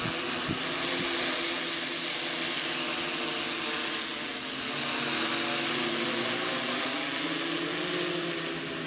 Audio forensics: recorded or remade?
recorded